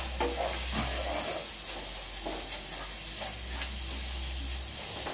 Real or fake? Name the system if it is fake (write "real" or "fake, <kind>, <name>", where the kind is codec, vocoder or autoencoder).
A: real